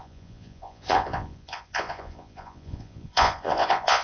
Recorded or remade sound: remade